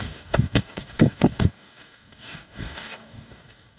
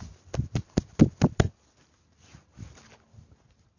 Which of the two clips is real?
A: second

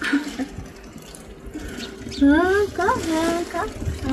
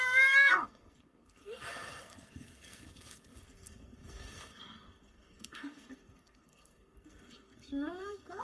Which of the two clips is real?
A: first